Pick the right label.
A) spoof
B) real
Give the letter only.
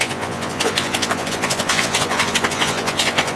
A